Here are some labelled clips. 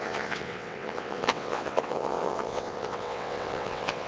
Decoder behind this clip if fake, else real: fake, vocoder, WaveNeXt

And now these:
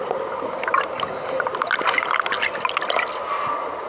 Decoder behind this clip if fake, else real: real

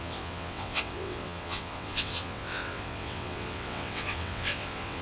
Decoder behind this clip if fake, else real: fake, vocoder, WaveNeXt